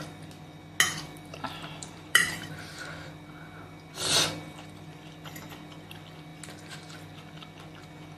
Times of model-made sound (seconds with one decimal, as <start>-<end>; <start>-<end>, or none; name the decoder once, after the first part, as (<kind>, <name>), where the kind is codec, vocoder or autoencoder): 1.3-2.7 (vocoder, BigVGAN v2)